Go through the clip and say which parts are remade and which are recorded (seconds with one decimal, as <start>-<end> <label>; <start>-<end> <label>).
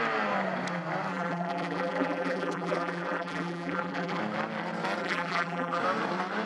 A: 0.0-1.1 recorded; 1.1-4.2 remade; 4.2-5.0 recorded; 5.0-5.8 remade; 5.8-6.5 recorded